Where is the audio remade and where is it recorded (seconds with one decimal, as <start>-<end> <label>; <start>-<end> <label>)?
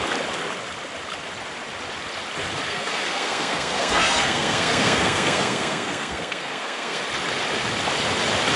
0.0-2.7 recorded; 2.7-7.0 remade; 7.0-8.6 recorded